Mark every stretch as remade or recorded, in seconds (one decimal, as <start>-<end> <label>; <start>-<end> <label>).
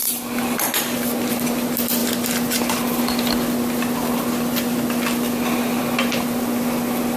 0.0-7.2 recorded